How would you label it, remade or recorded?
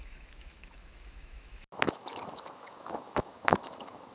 remade